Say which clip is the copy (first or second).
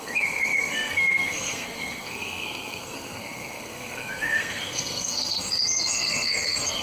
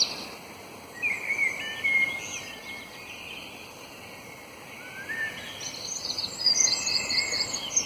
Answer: first